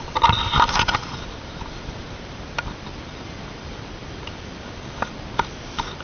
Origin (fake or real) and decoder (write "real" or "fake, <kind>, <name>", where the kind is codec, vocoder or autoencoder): real